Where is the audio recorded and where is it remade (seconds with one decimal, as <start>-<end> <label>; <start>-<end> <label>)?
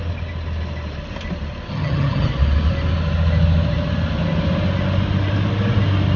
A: 0.0-1.7 recorded; 1.7-2.3 remade; 2.3-6.2 recorded